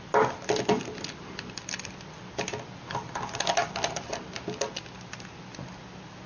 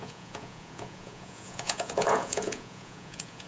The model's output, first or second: second